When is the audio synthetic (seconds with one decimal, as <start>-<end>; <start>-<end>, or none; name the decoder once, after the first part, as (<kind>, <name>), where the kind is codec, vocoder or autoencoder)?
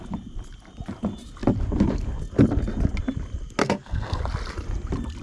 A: 3.6-4.2 (codec, SNAC)